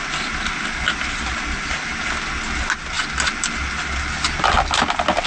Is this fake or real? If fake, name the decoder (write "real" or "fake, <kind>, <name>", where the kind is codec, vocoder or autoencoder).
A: real